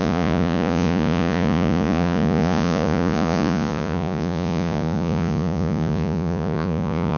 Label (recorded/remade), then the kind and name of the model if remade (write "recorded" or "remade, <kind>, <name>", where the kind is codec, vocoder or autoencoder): remade, vocoder, Vocos